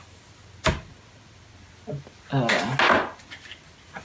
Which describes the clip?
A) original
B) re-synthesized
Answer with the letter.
A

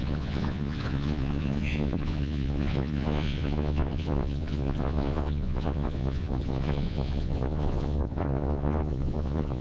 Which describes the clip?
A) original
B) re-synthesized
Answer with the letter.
B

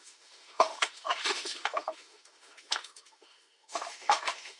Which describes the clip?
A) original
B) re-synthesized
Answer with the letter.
B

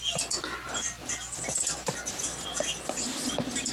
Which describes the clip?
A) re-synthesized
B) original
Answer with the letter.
B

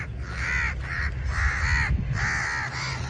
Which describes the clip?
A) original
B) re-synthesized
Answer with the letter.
A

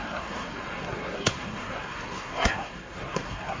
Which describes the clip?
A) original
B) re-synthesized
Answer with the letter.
B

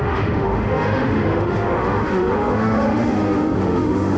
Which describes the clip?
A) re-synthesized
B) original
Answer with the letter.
A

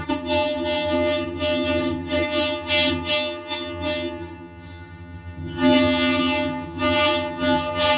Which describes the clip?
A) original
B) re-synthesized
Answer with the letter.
B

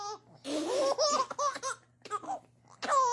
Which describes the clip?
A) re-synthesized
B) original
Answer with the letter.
B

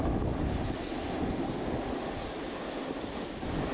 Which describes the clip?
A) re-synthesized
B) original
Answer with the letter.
B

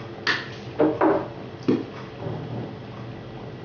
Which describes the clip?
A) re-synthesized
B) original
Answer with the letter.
B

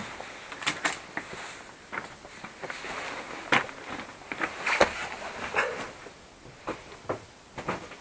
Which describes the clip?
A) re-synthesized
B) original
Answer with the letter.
B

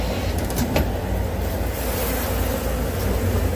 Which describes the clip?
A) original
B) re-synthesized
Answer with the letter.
A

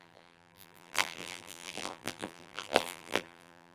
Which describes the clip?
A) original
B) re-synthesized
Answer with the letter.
B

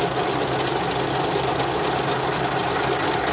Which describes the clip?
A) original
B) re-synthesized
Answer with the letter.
A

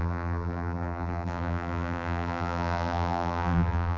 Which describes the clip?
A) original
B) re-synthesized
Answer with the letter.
B